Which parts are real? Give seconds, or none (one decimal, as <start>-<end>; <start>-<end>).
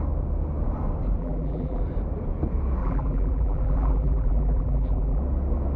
0.0-1.2; 1.8-2.8; 5.2-5.8